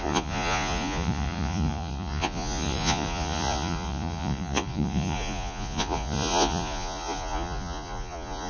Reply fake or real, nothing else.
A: fake